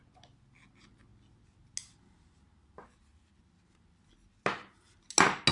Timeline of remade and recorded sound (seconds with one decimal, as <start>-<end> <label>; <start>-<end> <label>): 0.0-5.5 recorded